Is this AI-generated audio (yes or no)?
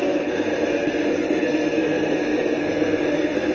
yes